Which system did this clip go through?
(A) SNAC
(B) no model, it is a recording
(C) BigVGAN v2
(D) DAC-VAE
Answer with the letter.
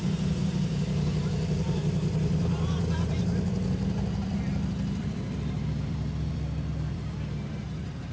C